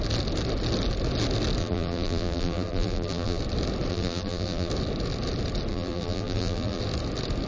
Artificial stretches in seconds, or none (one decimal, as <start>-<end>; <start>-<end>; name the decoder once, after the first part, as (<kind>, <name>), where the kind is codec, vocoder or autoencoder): 1.6-3.4 (vocoder, BigVGAN v2); 3.9-4.7; 5.7-6.8